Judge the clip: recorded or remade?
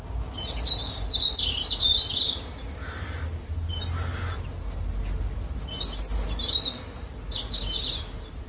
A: recorded